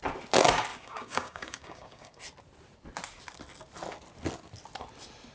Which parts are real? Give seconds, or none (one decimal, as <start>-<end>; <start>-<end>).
0.0-0.7; 2.2-5.3